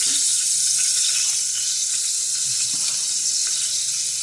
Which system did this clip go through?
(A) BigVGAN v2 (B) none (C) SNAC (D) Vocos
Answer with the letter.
B